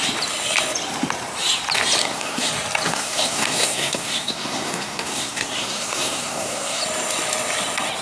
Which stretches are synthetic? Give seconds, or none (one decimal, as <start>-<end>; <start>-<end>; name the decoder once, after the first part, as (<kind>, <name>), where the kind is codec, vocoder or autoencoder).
2.0-2.5 (codec, SNAC); 2.9-6.8